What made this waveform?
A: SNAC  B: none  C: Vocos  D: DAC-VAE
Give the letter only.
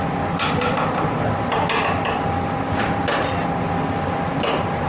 B